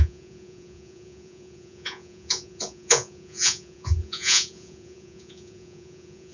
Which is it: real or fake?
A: fake